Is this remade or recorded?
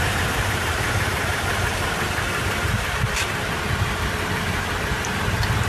remade